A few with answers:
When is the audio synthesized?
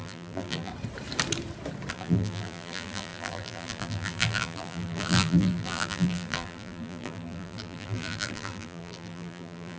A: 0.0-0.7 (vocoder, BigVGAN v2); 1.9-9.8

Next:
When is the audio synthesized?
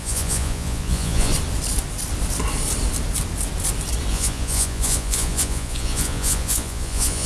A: 0.0-1.3 (vocoder, Vocos); 4.1-7.3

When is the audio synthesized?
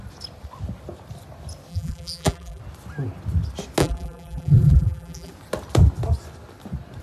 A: 1.7-2.6 (vocoder, BigVGAN v2); 3.8-5.3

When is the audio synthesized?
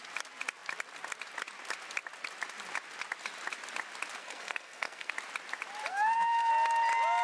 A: 4.2-5.1 (codec, SNAC); 5.9-6.5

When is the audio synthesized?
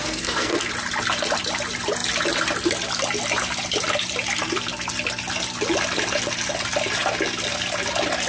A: 0.0-0.7 (codec, SNAC)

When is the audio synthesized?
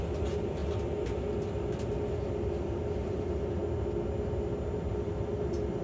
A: 0.0-0.6 (vocoder, BigVGAN v2); 2.3-3.6; 4.9-5.8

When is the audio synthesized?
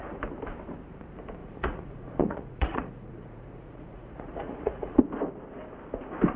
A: 1.4-5.0 (vocoder, Vocos)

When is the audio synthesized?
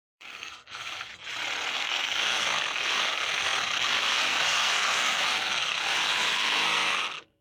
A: 0.0-1.1 (codec, SNAC); 1.7-7.4